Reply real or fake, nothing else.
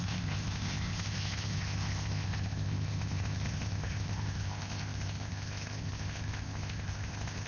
fake